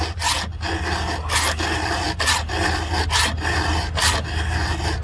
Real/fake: real